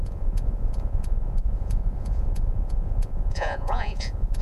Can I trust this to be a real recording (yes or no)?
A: no